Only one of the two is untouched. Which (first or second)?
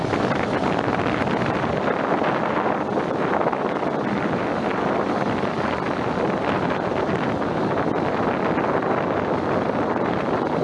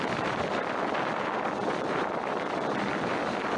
first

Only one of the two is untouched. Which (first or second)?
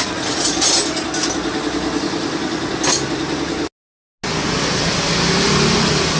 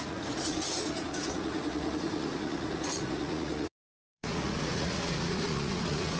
first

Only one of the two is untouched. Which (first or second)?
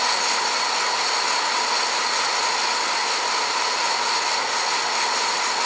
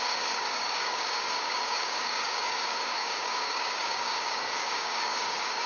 first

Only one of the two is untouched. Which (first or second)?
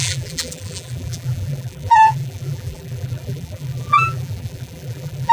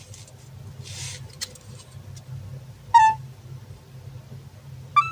second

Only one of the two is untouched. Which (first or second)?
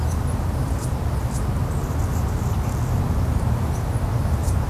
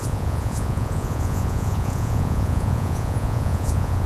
first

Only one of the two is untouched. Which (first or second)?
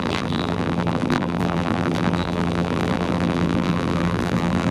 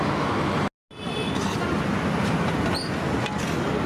second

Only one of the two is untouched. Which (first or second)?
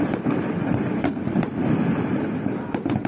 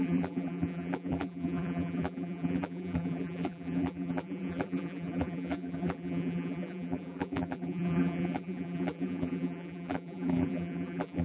first